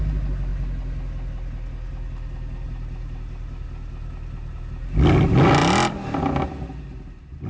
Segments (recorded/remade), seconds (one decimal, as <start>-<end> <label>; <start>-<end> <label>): 0.0-7.5 recorded